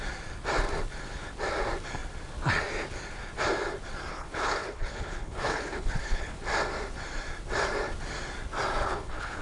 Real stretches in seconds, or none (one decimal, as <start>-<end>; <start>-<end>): 0.0-4.1; 6.4-8.8